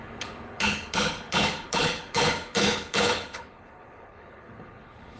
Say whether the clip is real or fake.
fake